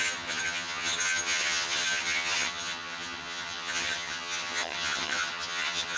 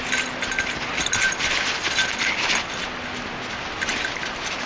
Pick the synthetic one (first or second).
first